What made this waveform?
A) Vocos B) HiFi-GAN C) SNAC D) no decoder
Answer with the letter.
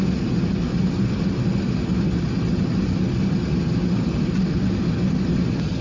D